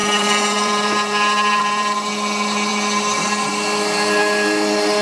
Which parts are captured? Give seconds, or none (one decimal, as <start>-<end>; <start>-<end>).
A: 2.1-5.0